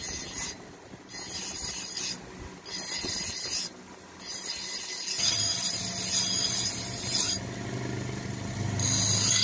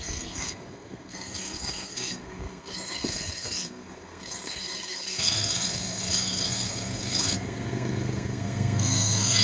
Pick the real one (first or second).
first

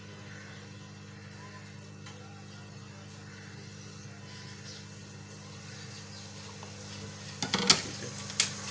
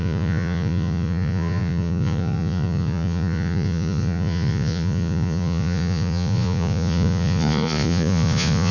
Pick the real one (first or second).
first